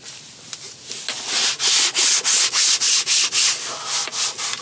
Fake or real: real